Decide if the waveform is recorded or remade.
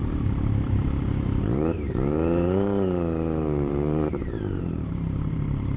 remade